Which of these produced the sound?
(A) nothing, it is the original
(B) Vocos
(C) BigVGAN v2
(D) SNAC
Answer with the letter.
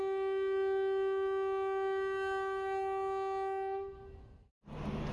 A